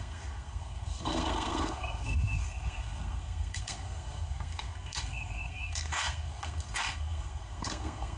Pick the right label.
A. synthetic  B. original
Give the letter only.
A